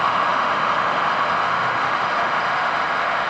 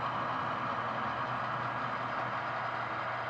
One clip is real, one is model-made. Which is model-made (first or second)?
first